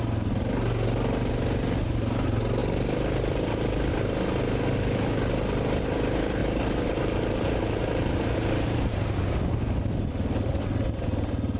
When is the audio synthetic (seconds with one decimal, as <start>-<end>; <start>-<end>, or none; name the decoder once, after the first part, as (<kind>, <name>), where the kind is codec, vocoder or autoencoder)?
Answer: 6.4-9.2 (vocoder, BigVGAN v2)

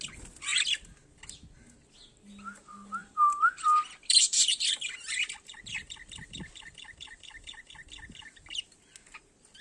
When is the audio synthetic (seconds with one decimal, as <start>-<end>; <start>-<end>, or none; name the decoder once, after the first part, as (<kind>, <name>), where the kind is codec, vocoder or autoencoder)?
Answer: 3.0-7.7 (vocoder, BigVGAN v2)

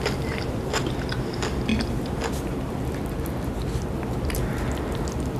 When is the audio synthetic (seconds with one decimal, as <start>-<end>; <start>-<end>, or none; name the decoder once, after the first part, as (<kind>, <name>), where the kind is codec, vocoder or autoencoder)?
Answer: none